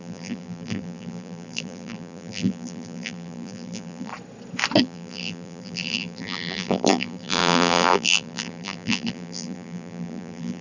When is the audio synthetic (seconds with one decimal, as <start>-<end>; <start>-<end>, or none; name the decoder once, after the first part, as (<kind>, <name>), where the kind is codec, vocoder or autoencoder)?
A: 0.0-4.1 (vocoder, BigVGAN v2); 4.8-10.6